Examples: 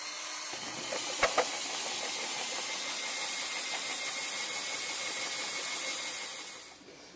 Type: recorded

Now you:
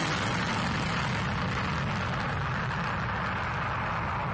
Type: recorded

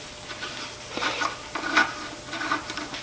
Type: recorded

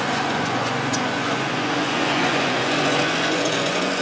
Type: remade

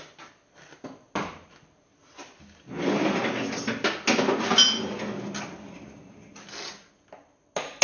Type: recorded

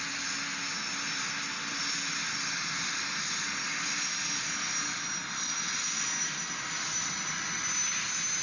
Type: recorded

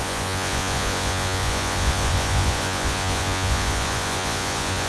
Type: remade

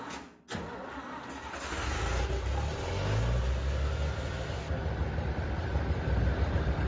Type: recorded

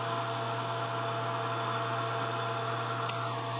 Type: recorded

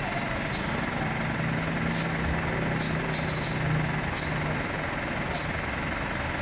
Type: recorded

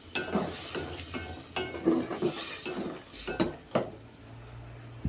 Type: recorded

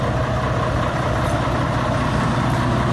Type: recorded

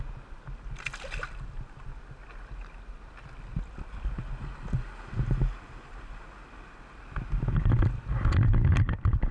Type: recorded